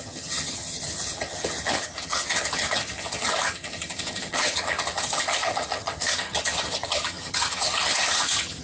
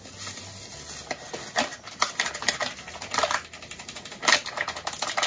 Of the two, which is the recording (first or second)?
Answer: second